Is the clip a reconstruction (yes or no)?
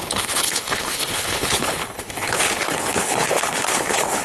yes